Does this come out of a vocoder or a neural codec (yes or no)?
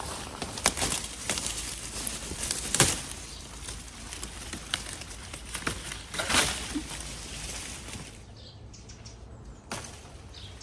no